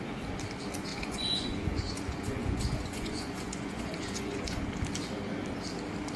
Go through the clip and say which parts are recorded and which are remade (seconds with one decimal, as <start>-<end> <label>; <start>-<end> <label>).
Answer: 0.0-0.9 recorded; 0.9-4.6 remade; 4.6-6.2 recorded